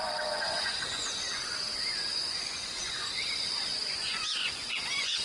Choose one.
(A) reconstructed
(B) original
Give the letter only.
A